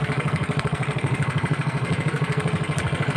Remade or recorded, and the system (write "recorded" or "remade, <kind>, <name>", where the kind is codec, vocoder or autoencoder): remade, codec, SNAC